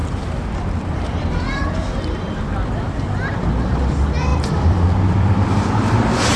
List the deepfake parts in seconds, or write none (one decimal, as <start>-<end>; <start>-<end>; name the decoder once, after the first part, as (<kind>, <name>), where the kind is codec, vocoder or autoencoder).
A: 0.0-2.4 (vocoder, BigVGAN v2); 4.3-5.9